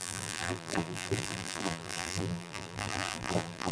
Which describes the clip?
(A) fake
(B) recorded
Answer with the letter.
A